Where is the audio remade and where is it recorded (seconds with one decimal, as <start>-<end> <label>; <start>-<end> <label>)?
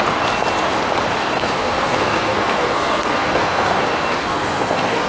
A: 0.0-1.2 recorded; 1.2-3.8 remade; 3.8-4.2 recorded; 4.2-5.1 remade